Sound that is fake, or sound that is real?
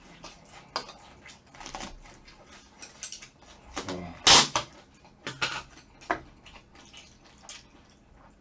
real